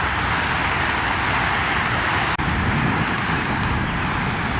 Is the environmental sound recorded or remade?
recorded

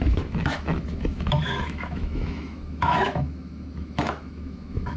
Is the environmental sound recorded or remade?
remade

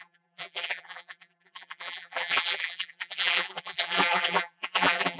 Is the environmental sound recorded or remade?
remade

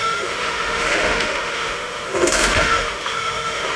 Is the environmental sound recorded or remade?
remade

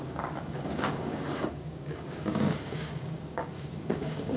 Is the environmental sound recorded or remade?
remade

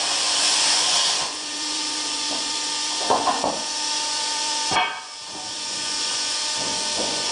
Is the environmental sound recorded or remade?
remade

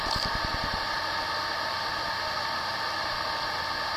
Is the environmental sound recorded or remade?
recorded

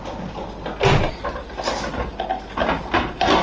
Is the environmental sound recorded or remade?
recorded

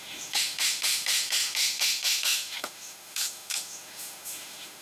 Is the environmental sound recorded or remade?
remade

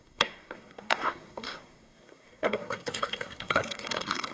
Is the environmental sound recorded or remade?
remade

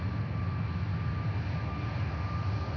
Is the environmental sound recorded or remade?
recorded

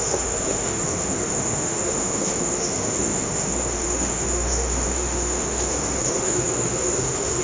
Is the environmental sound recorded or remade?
remade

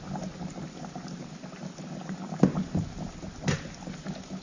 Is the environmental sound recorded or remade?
recorded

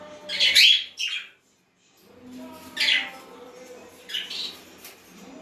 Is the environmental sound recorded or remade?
recorded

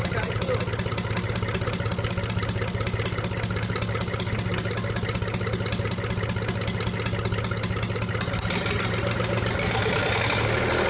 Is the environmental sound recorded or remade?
recorded